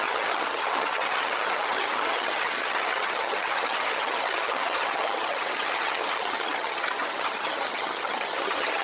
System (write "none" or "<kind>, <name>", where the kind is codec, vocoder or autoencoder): vocoder, HiFi-GAN